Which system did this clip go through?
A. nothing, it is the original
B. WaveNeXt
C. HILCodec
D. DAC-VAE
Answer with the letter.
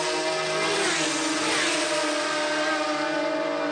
A